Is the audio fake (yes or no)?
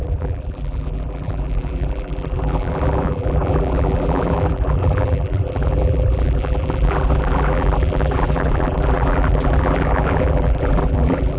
yes